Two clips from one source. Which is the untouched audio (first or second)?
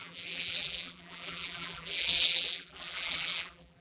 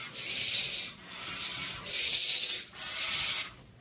second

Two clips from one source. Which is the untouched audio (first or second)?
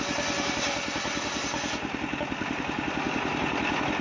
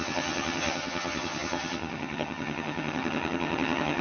first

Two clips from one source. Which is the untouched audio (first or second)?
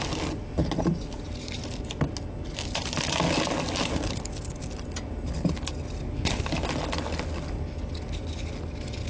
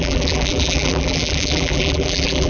first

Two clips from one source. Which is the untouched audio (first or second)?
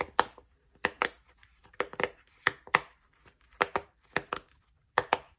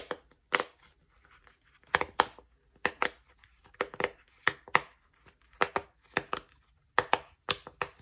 second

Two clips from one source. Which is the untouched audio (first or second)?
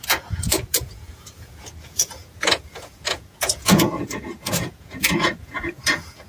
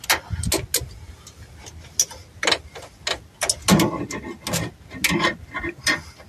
second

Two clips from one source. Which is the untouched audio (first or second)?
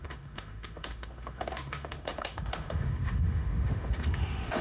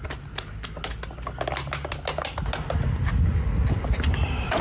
second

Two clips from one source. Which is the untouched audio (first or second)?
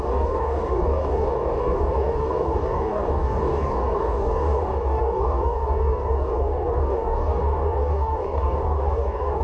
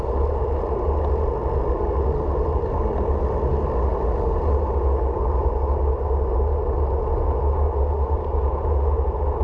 second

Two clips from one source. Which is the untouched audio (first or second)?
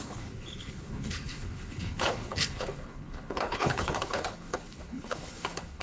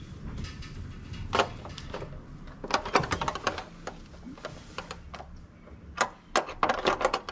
second